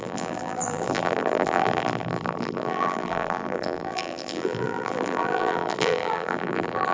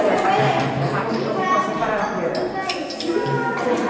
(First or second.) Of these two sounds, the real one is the second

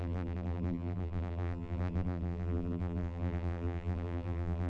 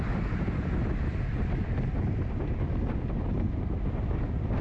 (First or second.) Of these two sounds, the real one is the second